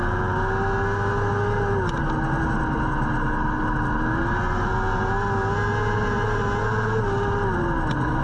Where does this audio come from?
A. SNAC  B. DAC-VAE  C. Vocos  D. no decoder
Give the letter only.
D